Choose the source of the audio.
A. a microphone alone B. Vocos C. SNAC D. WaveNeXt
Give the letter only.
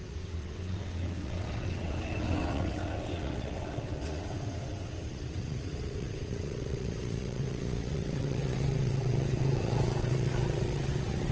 D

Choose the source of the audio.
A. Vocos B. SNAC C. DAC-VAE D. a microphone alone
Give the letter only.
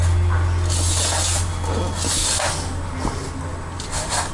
D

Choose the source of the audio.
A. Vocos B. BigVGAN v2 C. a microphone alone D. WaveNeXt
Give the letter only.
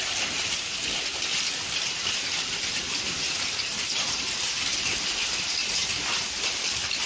C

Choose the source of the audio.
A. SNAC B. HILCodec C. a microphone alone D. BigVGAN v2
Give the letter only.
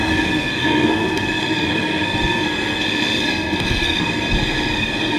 A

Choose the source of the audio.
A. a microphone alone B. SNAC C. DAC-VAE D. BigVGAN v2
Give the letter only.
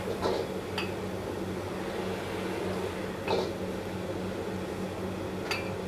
A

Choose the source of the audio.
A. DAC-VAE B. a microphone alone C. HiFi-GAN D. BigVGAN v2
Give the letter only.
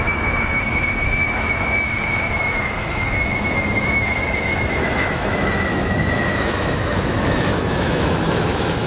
A